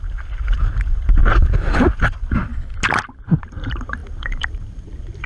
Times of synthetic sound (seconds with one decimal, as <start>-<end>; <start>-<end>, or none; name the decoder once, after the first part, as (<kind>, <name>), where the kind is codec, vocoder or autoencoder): 0.0-2.5 (vocoder, BigVGAN v2); 3.4-5.3